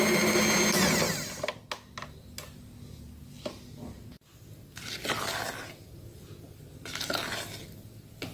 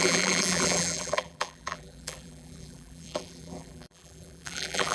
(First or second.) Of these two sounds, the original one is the first